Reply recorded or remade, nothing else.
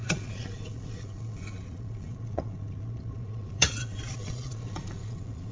remade